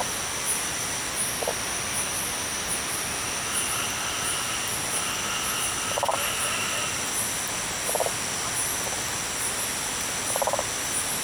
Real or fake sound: real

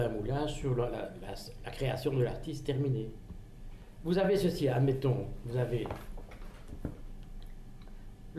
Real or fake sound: real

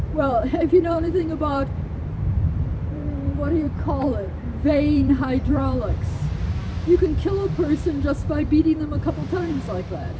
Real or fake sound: fake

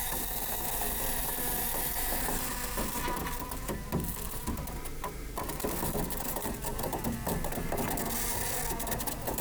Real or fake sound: real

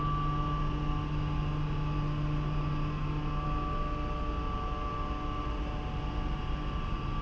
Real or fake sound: real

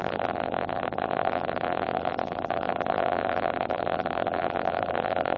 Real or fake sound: fake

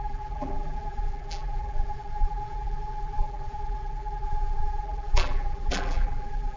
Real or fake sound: fake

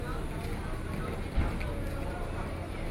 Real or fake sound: real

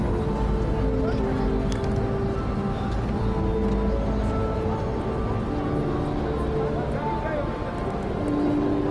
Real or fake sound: real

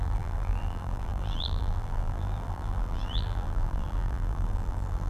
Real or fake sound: fake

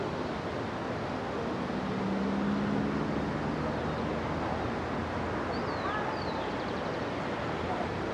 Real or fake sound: real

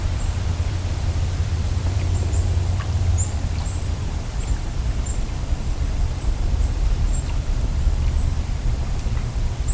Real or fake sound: fake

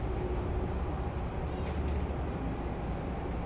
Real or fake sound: real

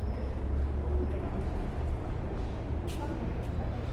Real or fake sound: real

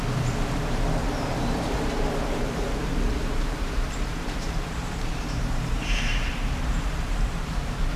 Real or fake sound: fake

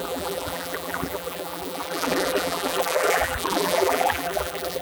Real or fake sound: fake